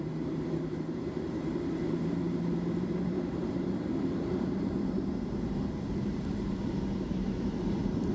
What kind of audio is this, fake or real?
fake